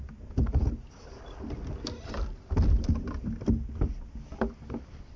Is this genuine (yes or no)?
yes